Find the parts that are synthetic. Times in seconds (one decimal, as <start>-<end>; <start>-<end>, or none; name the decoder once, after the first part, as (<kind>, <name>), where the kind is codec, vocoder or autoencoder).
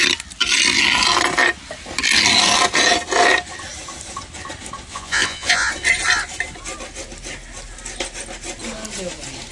4.9-5.7 (vocoder, Vocos)